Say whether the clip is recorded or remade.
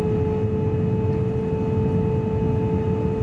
recorded